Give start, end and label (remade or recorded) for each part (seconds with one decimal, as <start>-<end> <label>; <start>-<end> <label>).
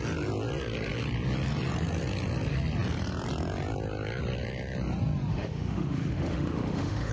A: 0.0-5.3 recorded; 5.3-7.1 remade